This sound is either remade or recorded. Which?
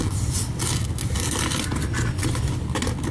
recorded